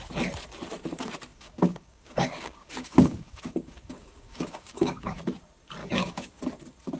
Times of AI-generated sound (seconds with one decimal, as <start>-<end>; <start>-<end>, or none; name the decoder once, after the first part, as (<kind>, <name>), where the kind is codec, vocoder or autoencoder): 1.3-5.2 (codec, DAC); 5.8-6.4